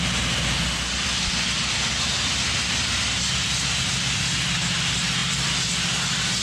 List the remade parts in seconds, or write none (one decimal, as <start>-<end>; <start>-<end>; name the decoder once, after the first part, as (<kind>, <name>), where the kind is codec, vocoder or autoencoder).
none